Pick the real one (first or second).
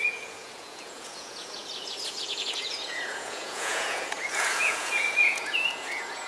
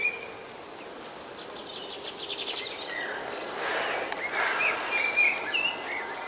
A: second